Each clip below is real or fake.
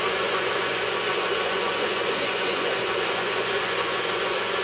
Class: fake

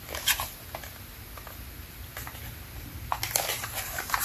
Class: real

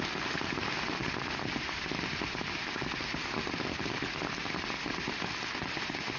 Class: real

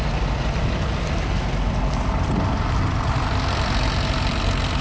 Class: real